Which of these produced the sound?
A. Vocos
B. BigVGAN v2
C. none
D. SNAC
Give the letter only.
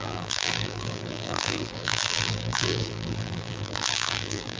B